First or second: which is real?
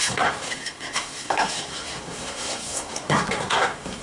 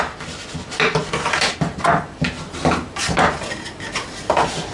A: second